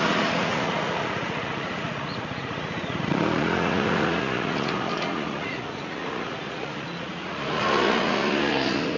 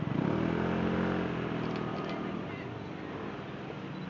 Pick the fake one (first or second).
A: first